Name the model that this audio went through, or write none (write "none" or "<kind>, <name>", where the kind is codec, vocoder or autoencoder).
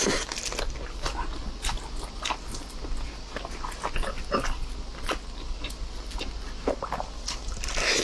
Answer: none